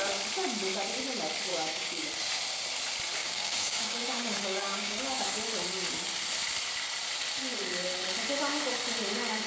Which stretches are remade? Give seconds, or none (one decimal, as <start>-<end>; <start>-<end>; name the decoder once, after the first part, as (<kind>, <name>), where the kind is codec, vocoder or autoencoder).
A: 1.5-2.1 (codec, DAC); 3.2-5.2